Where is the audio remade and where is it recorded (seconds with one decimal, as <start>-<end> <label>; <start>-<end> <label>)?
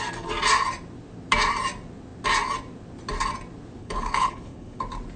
0.0-3.8 recorded; 3.8-4.8 remade; 4.8-5.2 recorded